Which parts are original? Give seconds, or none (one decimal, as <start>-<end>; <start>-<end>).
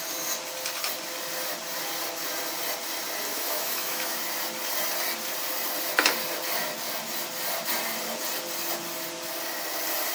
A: 0.0-3.3; 4.2-10.1